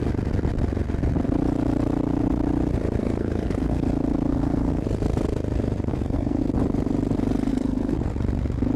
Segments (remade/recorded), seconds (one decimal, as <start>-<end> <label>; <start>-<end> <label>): 0.0-3.0 recorded; 3.0-3.9 remade; 3.9-4.3 recorded; 4.3-4.8 remade; 4.8-5.9 recorded; 5.9-6.4 remade; 6.4-7.5 recorded; 7.5-8.1 remade; 8.1-8.8 recorded